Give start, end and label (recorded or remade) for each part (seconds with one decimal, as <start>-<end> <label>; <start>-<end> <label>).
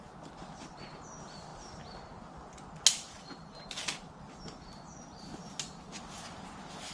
0.0-6.9 recorded